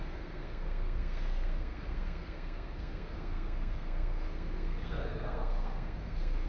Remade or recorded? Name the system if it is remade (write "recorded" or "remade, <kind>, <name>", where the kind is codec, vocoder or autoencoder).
remade, codec, SNAC